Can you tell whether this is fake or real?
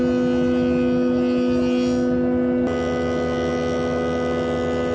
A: real